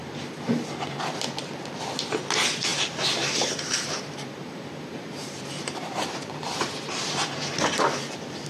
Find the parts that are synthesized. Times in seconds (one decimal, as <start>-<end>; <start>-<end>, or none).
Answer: 2.7-6.7